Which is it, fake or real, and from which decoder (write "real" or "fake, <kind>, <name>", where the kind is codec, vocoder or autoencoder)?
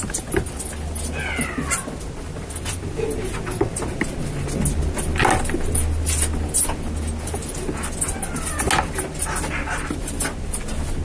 real